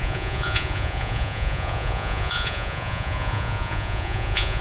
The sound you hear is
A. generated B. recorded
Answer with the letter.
A